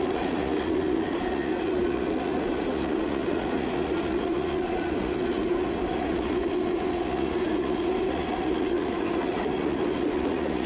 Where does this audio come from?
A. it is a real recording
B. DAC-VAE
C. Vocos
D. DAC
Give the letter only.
C